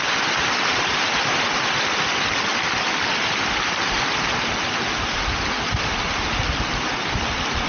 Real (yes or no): yes